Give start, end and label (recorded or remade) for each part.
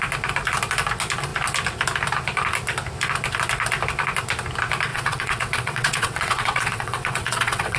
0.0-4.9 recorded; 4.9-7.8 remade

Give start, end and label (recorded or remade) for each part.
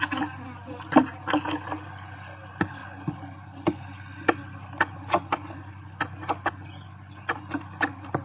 0.0-8.2 recorded